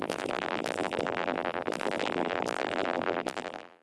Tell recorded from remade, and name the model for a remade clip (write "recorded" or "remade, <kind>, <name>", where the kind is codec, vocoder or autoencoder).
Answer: remade, vocoder, BigVGAN v2